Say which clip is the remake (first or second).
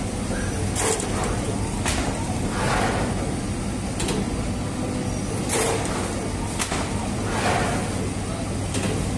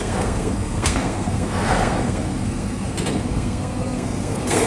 second